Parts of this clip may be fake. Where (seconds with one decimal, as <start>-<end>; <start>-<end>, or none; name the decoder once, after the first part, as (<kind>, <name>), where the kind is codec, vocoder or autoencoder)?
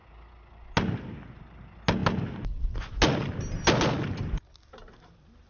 none